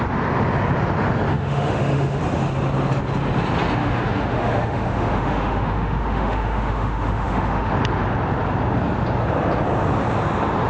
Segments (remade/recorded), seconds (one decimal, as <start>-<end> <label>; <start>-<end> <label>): 0.0-1.3 recorded; 1.3-2.2 remade; 2.2-3.8 recorded; 3.8-7.7 remade; 7.7-10.7 recorded